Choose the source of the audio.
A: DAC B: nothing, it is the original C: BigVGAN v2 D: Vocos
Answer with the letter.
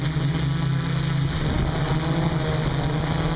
B